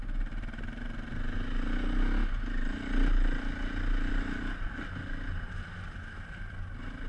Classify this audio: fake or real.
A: real